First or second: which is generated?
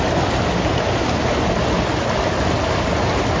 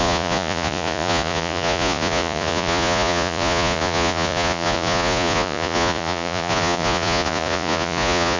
second